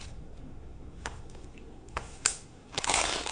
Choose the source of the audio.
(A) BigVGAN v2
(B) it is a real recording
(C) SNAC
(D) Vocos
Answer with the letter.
C